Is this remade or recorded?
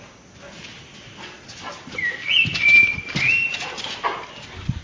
recorded